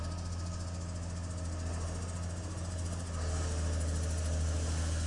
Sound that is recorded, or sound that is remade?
recorded